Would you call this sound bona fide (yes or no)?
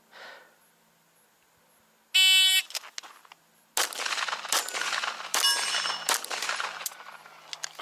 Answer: yes